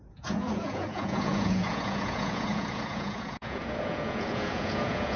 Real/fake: fake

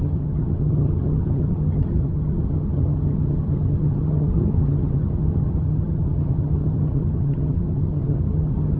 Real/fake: fake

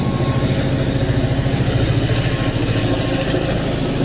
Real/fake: real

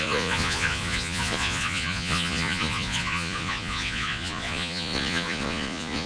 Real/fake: fake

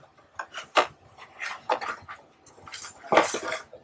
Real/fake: real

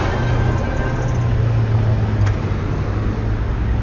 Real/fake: real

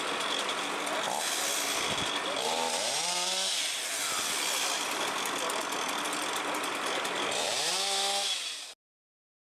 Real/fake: real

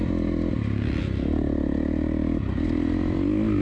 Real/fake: real